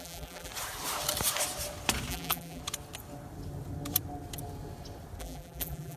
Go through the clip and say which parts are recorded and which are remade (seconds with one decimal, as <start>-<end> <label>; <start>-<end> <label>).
0.0-0.5 remade; 0.5-2.1 recorded; 2.1-2.6 remade; 2.6-5.2 recorded; 5.2-6.0 remade